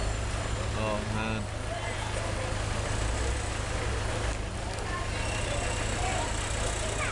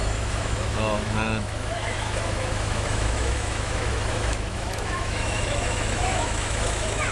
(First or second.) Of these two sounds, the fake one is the second